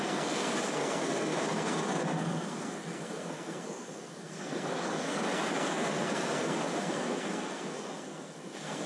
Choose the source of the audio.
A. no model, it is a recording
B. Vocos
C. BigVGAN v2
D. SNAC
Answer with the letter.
D